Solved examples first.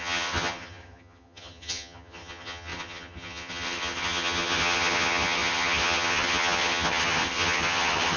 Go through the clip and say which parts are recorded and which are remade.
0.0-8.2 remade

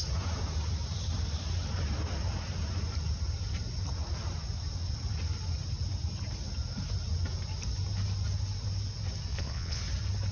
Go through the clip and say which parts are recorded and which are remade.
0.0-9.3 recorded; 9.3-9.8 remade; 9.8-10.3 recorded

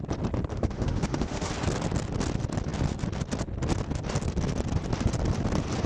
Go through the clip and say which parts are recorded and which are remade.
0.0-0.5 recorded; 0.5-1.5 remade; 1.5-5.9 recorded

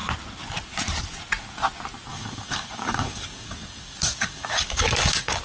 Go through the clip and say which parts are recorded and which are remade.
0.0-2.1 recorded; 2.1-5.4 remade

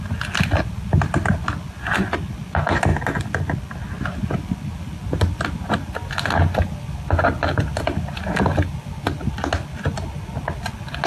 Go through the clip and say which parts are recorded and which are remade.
0.0-11.1 recorded

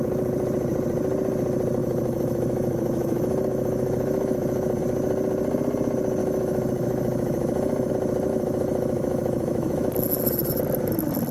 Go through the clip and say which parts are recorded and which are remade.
0.0-1.8 recorded; 1.8-4.8 remade; 4.8-6.2 recorded; 6.2-7.9 remade; 7.9-8.3 recorded; 8.3-9.9 remade; 9.9-11.3 recorded

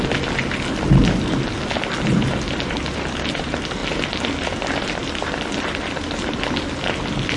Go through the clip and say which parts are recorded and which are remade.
0.0-3.8 recorded; 3.8-6.6 remade; 6.6-7.4 recorded